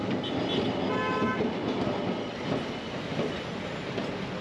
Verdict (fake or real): real